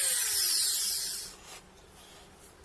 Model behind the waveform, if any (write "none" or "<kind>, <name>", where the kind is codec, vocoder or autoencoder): none